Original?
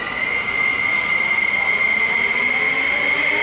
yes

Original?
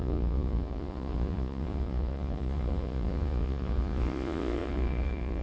no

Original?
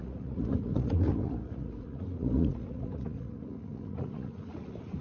no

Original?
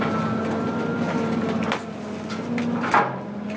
yes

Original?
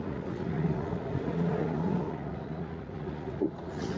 no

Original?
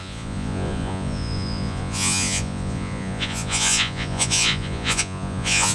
no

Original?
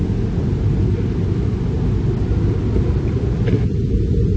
yes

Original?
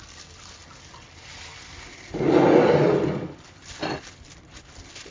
yes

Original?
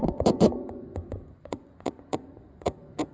no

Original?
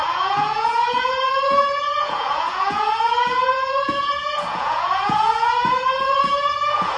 no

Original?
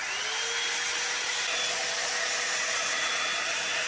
yes